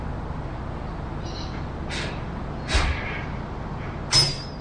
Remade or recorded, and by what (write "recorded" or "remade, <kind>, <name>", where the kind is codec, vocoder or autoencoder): recorded